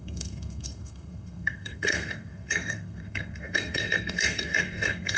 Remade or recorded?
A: remade